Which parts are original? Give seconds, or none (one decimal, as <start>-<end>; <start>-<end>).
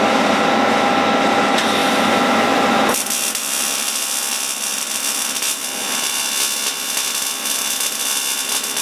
0.0-3.4; 4.0-4.7; 6.2-8.8